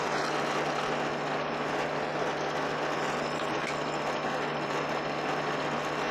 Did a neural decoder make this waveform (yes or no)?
no